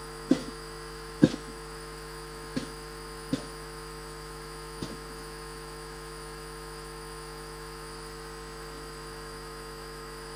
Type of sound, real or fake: fake